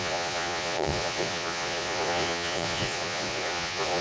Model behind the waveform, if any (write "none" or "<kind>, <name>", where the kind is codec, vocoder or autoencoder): vocoder, Vocos